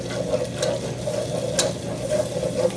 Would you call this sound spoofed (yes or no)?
no